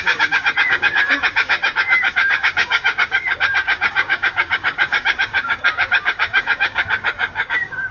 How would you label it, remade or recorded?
remade